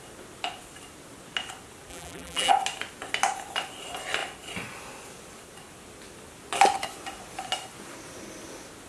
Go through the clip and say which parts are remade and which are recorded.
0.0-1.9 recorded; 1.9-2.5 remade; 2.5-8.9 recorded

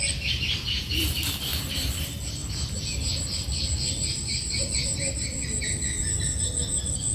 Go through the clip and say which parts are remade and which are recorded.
0.0-7.1 recorded

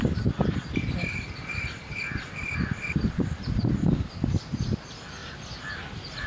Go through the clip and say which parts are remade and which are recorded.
0.0-1.1 recorded; 1.1-1.6 remade; 1.6-3.0 recorded; 3.0-3.7 remade; 3.7-6.3 recorded

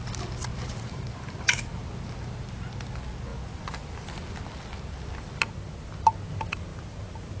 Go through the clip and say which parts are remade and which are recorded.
0.0-0.5 recorded; 0.5-1.8 remade; 1.8-6.7 recorded; 6.7-7.4 remade